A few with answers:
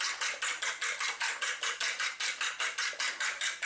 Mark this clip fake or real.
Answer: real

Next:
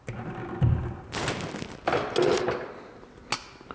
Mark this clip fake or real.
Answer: real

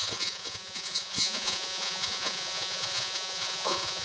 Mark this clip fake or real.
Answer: fake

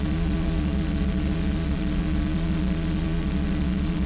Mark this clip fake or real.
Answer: fake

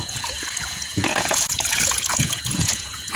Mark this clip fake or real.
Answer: fake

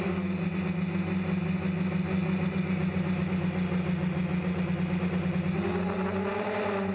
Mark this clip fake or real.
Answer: real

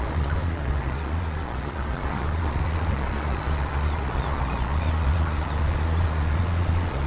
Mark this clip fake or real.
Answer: fake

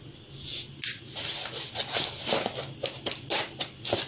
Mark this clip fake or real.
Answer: real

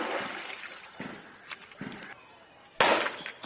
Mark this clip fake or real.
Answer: real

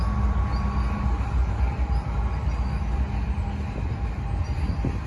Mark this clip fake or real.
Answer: real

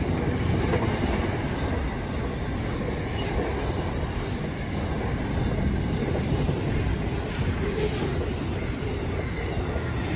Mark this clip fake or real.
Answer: real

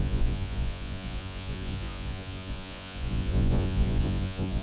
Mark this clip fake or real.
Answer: fake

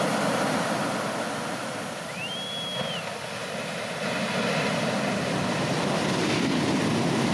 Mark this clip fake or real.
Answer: real